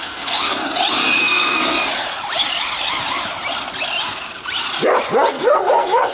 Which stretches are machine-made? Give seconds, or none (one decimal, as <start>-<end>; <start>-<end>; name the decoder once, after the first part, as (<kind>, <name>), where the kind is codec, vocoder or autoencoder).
0.0-0.5 (codec, SNAC); 1.2-1.6; 5.3-6.1